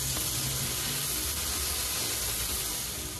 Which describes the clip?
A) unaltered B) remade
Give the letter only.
A